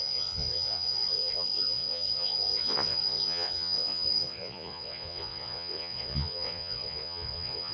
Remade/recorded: remade